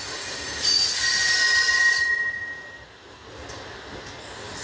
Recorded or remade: recorded